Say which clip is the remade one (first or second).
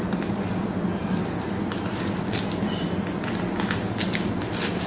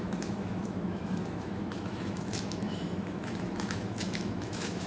second